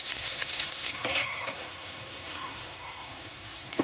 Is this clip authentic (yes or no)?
no